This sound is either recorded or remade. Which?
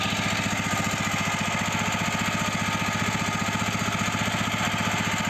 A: recorded